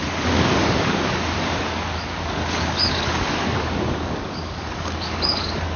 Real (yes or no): no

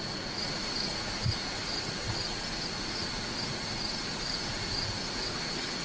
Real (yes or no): no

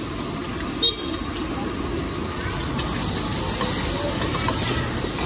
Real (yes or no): yes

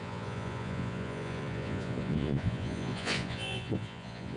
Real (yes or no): no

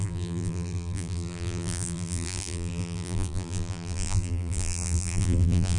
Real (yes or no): no